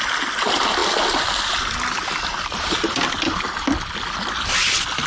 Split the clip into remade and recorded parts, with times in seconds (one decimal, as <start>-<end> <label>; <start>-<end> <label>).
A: 0.0-5.1 recorded

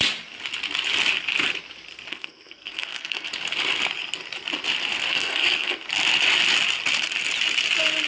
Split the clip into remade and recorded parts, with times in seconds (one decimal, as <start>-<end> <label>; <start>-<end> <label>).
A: 0.0-2.1 recorded; 2.1-3.3 remade; 3.3-5.1 recorded; 5.1-5.9 remade; 5.9-8.1 recorded